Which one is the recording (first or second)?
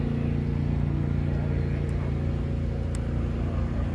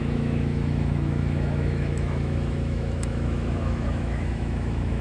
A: first